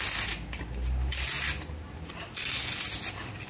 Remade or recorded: recorded